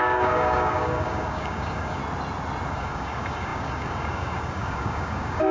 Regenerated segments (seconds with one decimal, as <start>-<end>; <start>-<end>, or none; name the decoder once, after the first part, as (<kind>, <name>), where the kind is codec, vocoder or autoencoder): 0.0-2.0 (codec, DAC); 2.7-5.5